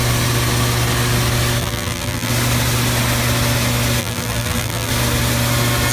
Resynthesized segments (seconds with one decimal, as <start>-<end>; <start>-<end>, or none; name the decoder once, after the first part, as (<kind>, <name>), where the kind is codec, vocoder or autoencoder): 1.6-2.3 (vocoder, BigVGAN v2); 4.0-4.9